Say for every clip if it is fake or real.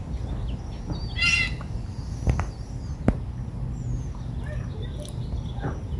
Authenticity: real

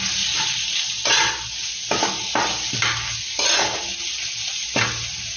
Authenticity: real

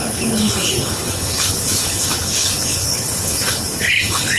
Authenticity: fake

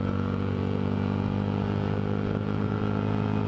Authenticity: fake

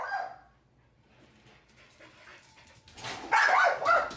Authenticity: real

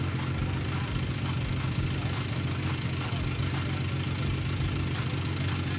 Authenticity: real